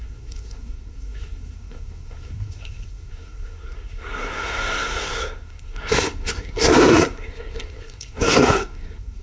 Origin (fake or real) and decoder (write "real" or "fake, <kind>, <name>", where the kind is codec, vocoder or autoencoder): fake, codec, SNAC